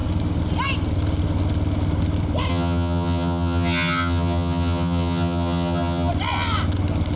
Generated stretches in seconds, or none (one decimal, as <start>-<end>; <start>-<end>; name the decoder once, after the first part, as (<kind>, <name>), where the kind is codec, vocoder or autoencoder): 2.5-6.1 (vocoder, HiFi-GAN)